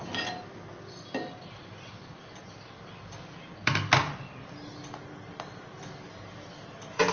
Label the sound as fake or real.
real